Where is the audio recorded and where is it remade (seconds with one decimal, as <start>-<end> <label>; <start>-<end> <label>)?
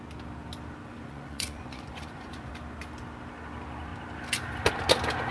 0.0-0.9 recorded; 0.9-2.5 remade; 2.5-5.3 recorded